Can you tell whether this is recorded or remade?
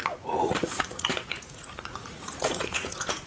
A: remade